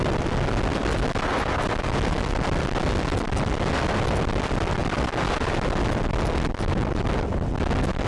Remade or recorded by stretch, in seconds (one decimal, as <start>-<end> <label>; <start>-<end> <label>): 0.0-8.1 recorded